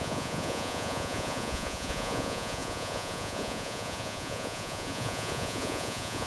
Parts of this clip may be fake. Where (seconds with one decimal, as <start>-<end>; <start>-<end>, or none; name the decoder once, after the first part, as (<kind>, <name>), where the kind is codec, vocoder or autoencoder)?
0.0-6.3 (vocoder, Vocos)